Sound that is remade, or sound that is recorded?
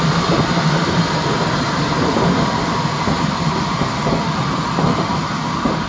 recorded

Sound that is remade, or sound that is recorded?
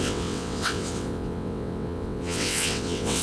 remade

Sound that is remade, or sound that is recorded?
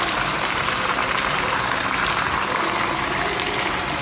remade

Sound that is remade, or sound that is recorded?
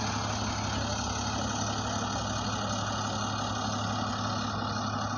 recorded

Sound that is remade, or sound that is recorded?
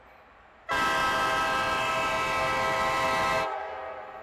recorded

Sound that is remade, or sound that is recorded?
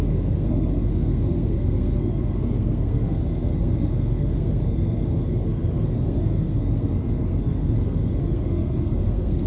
remade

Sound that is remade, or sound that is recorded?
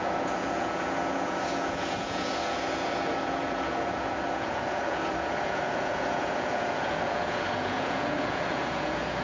remade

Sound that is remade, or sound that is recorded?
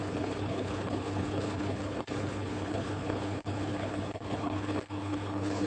remade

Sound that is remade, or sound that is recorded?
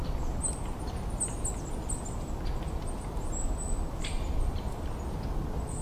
recorded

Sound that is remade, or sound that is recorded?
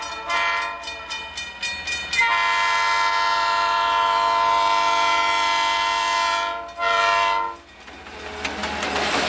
recorded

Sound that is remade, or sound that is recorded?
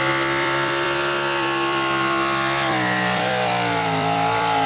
remade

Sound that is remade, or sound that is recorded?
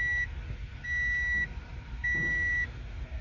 recorded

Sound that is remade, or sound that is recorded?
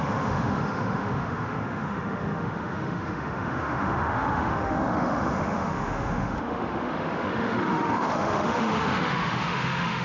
remade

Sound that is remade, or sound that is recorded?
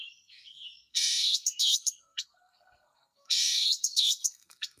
remade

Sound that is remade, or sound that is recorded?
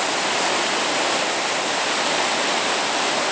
recorded